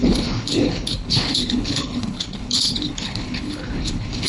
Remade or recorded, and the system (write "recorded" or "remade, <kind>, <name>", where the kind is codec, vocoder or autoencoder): remade, codec, HILCodec